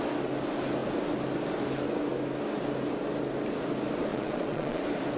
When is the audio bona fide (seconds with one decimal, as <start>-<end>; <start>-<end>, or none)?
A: 0.0-4.1; 4.8-5.2